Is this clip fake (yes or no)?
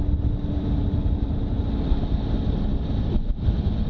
no